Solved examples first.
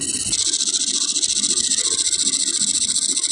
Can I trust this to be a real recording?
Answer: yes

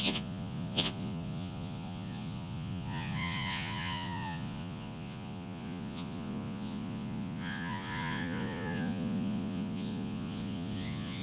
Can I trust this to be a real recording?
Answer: no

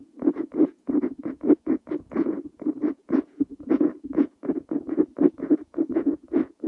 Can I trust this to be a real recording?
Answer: no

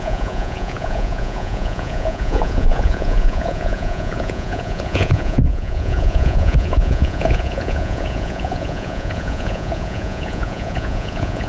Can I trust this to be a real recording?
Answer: no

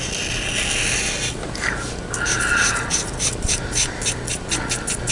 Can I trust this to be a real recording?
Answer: yes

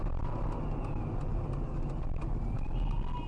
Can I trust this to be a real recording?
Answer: yes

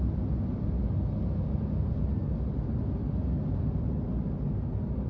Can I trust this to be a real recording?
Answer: yes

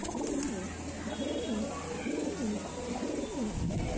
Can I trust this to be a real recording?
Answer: yes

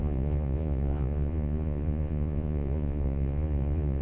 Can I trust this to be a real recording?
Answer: no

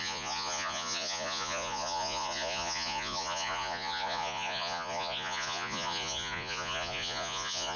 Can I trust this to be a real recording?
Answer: no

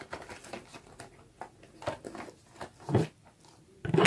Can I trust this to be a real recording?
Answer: yes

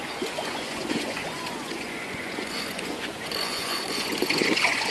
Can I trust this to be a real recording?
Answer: no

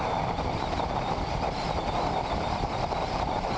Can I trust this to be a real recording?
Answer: yes